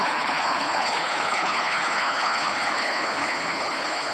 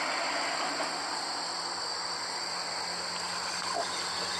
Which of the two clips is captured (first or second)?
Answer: second